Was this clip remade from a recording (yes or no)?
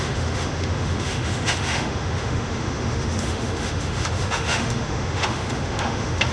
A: yes